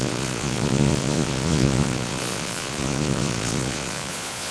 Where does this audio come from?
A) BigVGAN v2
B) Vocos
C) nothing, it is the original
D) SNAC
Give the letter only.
B